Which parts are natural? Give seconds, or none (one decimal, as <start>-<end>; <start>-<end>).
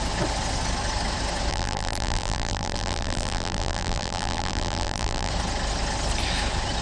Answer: 0.0-1.5; 5.3-6.8